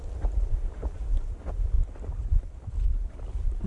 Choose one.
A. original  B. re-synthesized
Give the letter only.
A